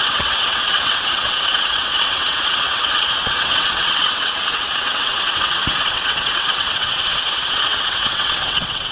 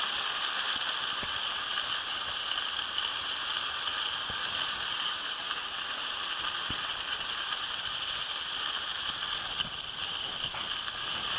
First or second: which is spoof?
first